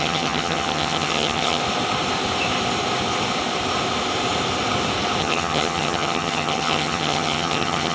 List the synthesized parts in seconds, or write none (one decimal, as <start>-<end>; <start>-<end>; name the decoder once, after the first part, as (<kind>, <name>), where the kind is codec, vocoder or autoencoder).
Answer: 0.0-1.6 (vocoder, HiFi-GAN); 5.2-7.9